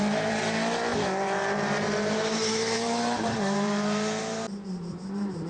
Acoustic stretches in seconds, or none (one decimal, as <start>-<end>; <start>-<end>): none